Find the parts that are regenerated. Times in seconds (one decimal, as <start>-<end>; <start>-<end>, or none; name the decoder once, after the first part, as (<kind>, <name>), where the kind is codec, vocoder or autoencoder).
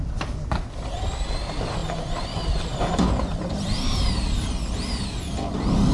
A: 1.8-2.4 (vocoder, BigVGAN v2); 3.3-3.9